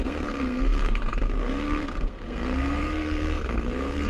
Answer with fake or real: fake